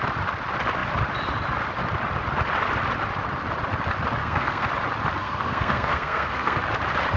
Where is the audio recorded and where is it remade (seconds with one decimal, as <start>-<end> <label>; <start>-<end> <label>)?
0.0-4.2 recorded; 4.2-4.7 remade; 4.7-5.2 recorded; 5.2-6.6 remade; 6.6-7.2 recorded

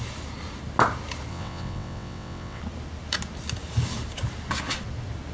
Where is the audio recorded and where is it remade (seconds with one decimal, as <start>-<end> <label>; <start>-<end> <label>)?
0.0-1.3 recorded; 1.3-2.6 remade; 2.6-5.3 recorded

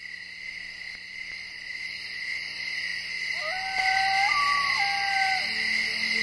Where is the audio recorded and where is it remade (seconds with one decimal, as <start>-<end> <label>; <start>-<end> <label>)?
0.0-6.2 recorded

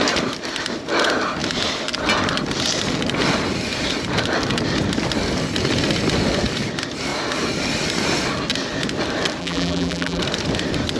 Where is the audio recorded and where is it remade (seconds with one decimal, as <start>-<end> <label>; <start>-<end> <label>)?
0.0-9.4 recorded; 9.4-10.2 remade; 10.2-11.0 recorded

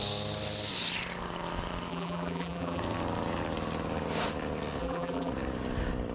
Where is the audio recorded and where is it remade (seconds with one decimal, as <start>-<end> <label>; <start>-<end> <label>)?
0.0-1.9 recorded; 1.9-2.8 remade; 2.8-4.8 recorded; 4.8-5.3 remade; 5.3-6.1 recorded

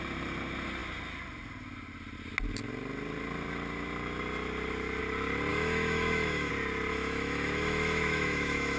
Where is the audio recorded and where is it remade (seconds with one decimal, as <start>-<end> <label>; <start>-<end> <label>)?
0.0-5.5 recorded; 5.5-6.5 remade; 6.5-6.9 recorded; 6.9-8.8 remade

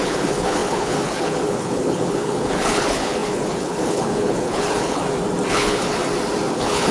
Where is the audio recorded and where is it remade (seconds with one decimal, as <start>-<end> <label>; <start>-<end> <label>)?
0.0-5.0 remade; 5.0-5.5 recorded; 5.5-6.0 remade; 6.0-6.5 recorded; 6.5-6.9 remade